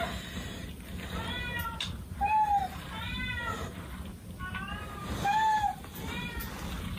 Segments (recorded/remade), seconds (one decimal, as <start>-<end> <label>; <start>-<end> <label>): 0.0-7.0 recorded